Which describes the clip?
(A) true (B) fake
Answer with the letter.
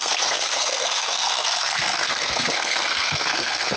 B